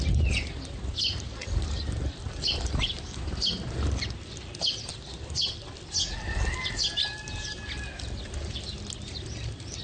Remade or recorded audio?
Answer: recorded